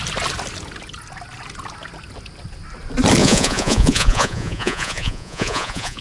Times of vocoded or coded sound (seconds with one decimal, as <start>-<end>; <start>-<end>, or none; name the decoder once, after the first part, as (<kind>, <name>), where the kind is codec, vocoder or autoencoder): 3.2-6.0 (vocoder, Vocos)